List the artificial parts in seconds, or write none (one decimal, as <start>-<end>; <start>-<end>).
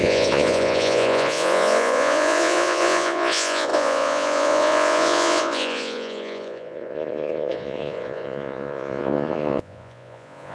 0.0-10.5